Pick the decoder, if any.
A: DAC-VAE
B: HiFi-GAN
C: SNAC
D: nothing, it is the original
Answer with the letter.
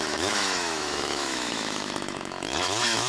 A